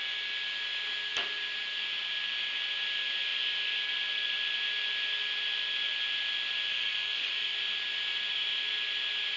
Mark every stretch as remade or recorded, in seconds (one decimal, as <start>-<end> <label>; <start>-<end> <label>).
0.0-6.7 recorded; 6.7-7.3 remade; 7.3-9.4 recorded